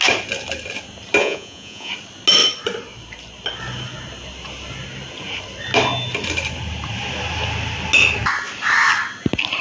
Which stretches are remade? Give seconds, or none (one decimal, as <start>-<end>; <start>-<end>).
1.2-1.9